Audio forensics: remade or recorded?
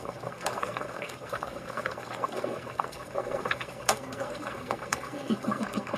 remade